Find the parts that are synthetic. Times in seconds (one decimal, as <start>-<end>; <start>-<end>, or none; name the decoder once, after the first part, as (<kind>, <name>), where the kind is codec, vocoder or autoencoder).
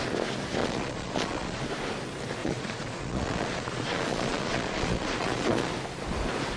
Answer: 0.6-1.6 (vocoder, Vocos); 2.4-5.7